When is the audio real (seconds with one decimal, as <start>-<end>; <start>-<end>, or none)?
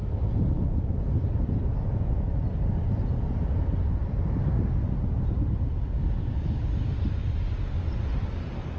0.0-8.8